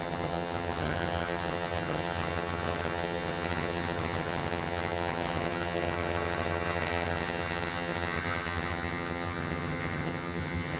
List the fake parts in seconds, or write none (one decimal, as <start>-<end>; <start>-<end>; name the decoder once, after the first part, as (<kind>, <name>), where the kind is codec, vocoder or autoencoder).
0.0-10.8 (vocoder, HiFi-GAN)